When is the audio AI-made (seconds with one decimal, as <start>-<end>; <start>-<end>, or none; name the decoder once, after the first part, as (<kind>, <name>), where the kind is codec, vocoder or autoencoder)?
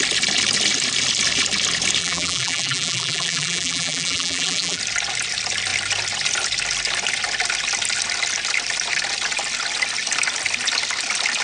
2.0-4.8 (vocoder, BigVGAN v2)